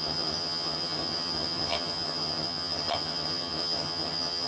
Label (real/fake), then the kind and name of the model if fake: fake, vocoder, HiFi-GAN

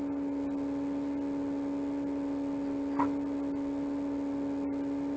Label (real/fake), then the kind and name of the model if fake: real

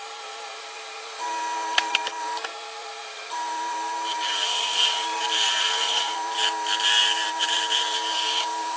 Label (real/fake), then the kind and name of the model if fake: fake, vocoder, BigVGAN v2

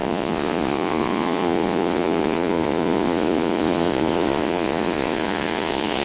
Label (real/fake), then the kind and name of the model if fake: fake, vocoder, Vocos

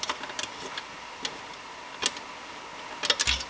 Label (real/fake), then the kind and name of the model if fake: real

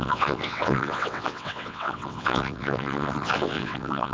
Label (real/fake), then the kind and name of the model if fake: fake, vocoder, WaveNeXt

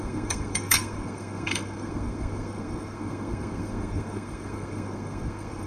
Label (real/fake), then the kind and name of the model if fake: fake, codec, SNAC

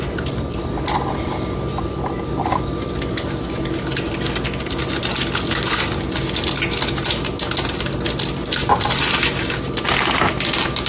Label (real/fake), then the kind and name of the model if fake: real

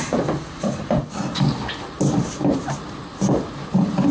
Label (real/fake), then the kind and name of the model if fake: real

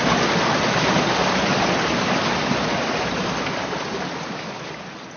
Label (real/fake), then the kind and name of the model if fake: real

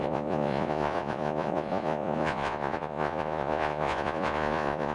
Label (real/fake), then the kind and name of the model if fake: fake, vocoder, Vocos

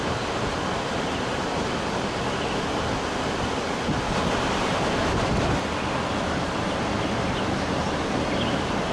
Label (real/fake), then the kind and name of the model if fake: real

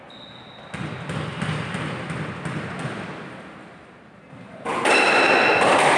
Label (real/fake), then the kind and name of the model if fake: real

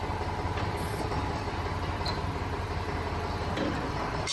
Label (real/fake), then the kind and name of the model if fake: real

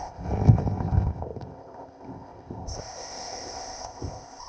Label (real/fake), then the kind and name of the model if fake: fake, codec, ZipCodec